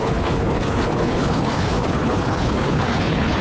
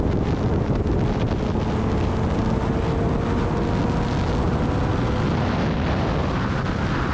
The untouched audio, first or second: second